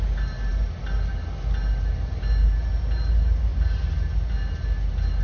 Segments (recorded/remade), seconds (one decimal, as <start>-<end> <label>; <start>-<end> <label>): 0.0-5.2 recorded